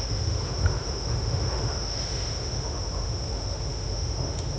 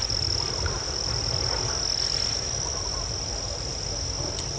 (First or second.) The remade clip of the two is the first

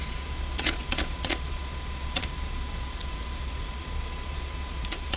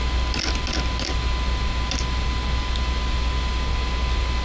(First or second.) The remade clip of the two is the first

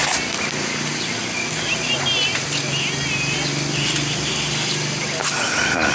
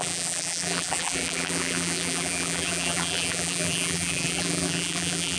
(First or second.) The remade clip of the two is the second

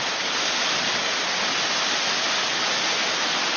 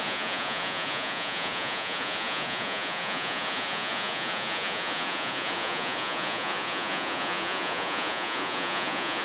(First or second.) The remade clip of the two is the second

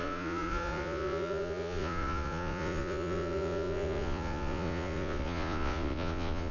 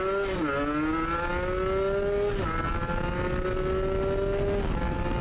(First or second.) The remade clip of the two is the first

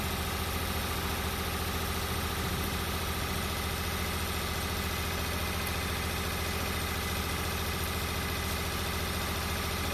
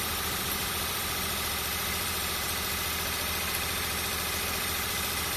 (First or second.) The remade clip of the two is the second